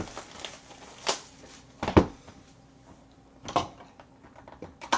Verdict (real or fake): real